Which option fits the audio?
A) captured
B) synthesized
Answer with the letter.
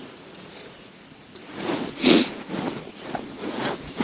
B